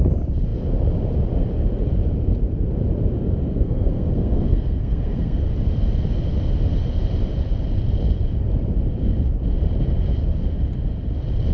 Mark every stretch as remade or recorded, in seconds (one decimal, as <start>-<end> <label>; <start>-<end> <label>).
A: 0.0-3.5 recorded; 3.5-5.5 remade; 5.5-11.5 recorded